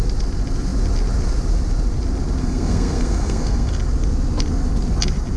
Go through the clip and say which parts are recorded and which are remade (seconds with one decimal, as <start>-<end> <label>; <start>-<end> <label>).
0.0-2.4 recorded; 2.4-3.7 remade; 3.7-5.4 recorded